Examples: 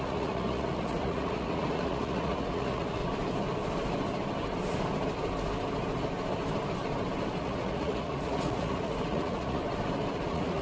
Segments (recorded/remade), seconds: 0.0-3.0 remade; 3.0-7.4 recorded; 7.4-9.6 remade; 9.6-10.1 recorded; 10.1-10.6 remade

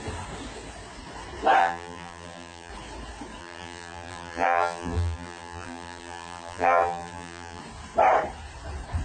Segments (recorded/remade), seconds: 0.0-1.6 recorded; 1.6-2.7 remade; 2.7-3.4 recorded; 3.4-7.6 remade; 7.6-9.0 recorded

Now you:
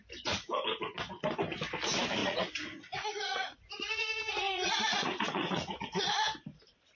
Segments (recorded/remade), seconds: 0.0-2.2 recorded; 2.2-6.1 remade; 6.1-7.0 recorded

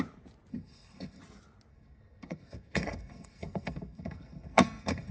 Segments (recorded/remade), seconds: 0.0-0.5 recorded; 0.5-1.2 remade; 1.2-1.7 recorded; 1.7-5.1 remade

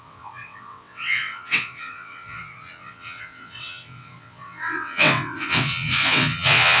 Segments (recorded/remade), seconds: 0.0-6.8 remade